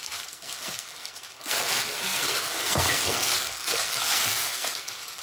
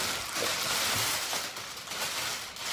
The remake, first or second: first